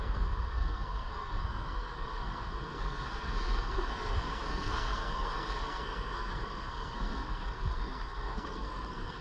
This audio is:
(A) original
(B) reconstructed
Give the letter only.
B